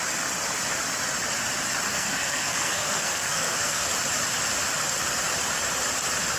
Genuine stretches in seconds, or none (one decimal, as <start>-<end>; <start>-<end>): 0.0-1.9; 3.9-6.4